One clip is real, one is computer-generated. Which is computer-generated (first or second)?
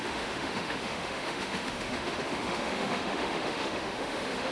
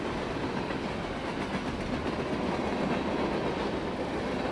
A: first